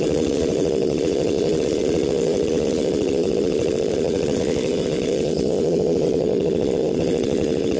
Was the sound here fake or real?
fake